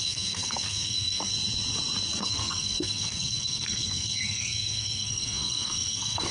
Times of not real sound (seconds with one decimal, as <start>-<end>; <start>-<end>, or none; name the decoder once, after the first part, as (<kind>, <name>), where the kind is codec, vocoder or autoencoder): 0.0-1.3 (codec, SNAC); 2.2-6.3